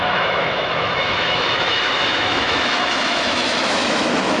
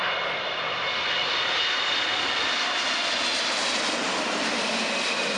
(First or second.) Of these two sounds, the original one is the second